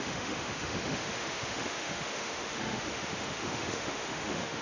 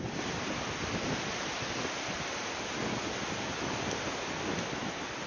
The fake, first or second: first